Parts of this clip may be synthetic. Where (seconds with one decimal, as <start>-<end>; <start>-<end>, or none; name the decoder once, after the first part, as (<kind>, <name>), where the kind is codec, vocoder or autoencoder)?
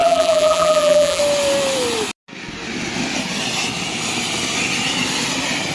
0.0-1.2 (vocoder, BigVGAN v2)